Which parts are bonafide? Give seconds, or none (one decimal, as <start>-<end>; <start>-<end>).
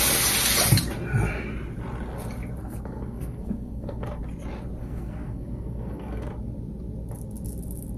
0.0-2.6; 4.2-4.8; 6.3-8.0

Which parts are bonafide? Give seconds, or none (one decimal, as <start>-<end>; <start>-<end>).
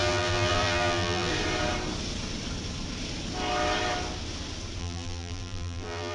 1.3-4.8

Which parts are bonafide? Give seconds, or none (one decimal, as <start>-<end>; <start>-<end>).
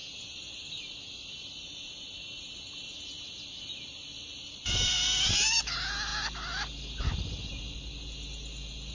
0.0-8.9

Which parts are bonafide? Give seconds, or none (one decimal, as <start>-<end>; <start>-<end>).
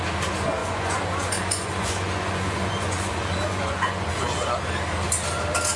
0.0-0.6; 4.1-5.8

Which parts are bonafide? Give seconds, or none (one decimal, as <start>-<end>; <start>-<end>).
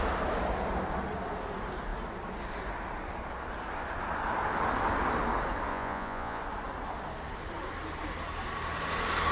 0.0-5.7; 6.4-9.3